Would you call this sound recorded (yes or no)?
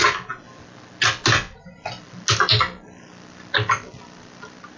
yes